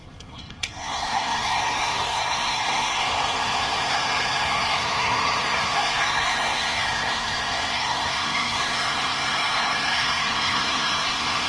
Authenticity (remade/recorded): remade